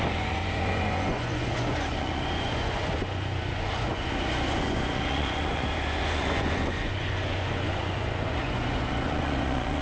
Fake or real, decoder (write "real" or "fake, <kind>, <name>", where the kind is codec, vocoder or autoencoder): fake, vocoder, Vocos